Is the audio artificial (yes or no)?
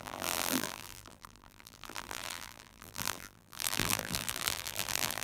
yes